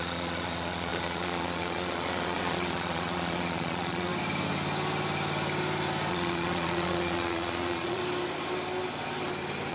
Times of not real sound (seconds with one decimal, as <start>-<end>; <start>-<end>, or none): 0.0-4.1; 6.1-8.0